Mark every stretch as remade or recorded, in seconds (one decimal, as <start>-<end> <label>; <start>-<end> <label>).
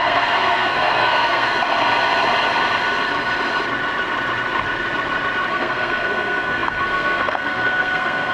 0.0-1.5 remade; 1.5-5.5 recorded; 5.5-8.3 remade